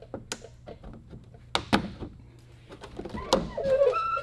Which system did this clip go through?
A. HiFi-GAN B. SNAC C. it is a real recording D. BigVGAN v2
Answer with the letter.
C